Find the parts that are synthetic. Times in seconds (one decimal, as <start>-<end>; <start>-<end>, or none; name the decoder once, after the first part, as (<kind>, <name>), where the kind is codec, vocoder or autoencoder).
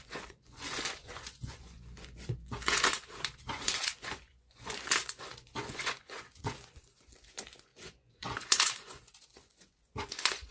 0.0-10.5 (vocoder, Vocos)